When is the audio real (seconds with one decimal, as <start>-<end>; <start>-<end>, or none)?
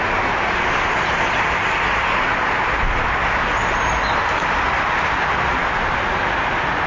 0.0-6.9